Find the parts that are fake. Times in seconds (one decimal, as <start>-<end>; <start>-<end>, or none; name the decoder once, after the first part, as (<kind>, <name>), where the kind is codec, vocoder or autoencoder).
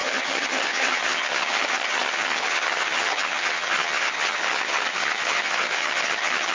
0.0-6.5 (vocoder, HiFi-GAN)